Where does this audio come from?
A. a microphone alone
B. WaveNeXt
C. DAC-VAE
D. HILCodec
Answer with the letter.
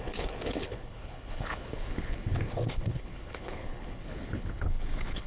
D